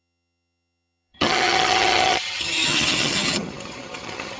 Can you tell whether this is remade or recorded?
remade